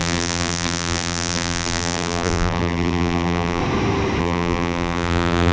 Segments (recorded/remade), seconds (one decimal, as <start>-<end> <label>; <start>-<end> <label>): 0.0-3.6 remade; 3.6-4.2 recorded; 4.2-5.5 remade